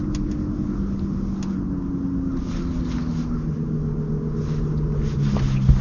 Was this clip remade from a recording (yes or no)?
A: no